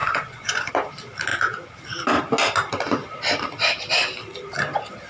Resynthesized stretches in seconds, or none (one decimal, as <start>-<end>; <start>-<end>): 0.0-0.7